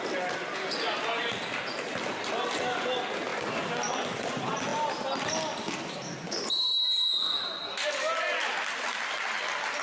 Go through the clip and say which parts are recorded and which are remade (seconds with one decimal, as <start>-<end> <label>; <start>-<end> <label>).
0.0-9.8 recorded